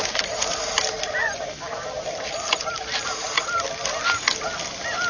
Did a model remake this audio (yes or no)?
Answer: no